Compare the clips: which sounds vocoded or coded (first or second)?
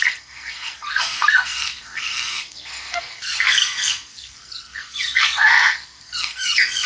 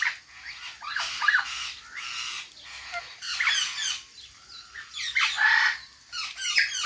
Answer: first